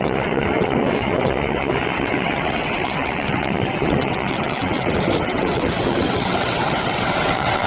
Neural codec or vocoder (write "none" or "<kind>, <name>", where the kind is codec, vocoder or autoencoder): vocoder, WaveNeXt